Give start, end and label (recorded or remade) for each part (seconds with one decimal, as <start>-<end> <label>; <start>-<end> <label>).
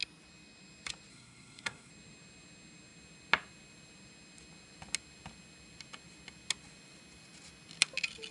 0.0-1.1 recorded; 1.1-1.9 remade; 1.9-8.3 recorded